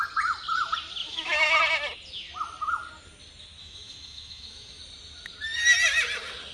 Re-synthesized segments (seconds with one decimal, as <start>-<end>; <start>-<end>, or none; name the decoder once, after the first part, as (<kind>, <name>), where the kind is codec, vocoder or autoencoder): 1.0-1.6 (autoencoder, DAC-VAE); 3.6-4.8